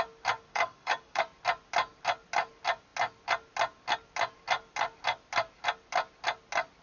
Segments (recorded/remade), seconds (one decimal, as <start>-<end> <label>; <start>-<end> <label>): 0.0-0.5 recorded; 0.5-1.2 remade; 1.2-6.8 recorded